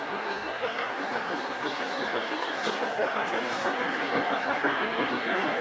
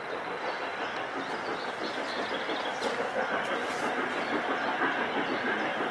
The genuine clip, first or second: second